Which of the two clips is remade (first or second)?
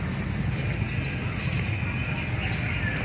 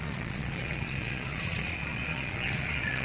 second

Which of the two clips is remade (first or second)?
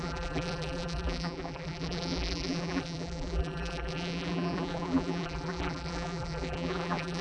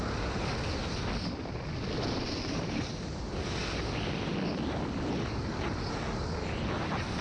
first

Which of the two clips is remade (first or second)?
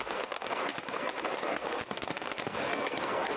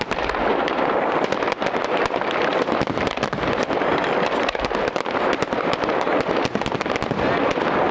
first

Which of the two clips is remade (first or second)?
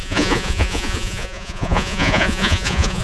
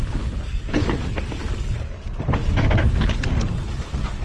first